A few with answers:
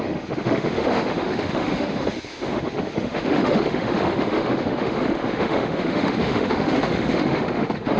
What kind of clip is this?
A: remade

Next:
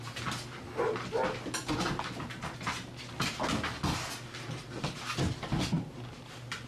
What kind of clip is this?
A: recorded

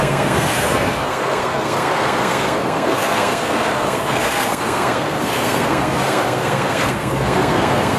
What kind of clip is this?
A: remade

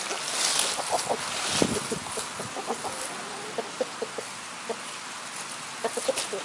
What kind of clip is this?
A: recorded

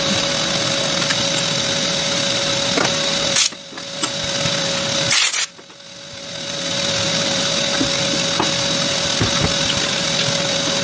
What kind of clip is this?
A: recorded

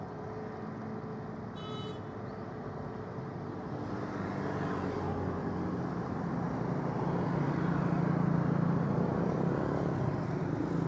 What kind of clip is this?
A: recorded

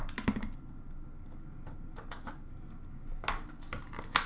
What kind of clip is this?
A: recorded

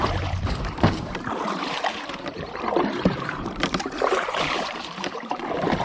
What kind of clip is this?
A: remade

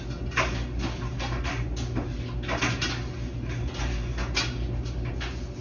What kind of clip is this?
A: recorded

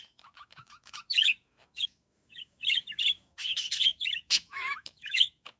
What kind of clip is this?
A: remade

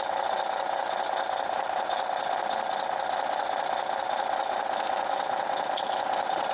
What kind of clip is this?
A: recorded